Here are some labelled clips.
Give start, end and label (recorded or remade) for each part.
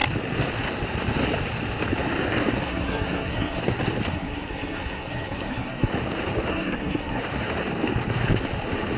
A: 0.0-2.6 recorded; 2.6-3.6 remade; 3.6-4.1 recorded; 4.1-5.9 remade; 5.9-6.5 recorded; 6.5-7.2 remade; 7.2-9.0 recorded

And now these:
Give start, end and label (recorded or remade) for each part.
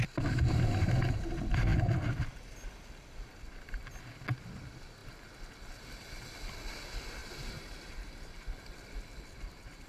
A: 0.0-7.2 recorded; 7.2-8.7 remade; 8.7-9.9 recorded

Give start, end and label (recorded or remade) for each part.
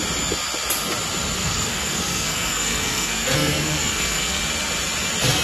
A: 0.0-1.4 recorded; 1.4-4.4 remade; 4.4-5.4 recorded